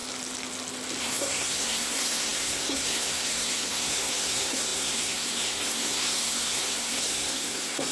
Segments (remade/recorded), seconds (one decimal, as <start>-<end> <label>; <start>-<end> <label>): 0.0-1.0 recorded; 1.0-7.9 remade